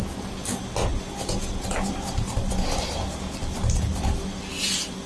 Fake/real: real